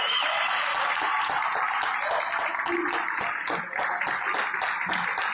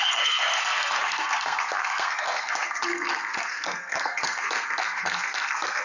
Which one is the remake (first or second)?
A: second